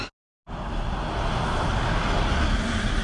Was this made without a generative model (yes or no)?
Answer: yes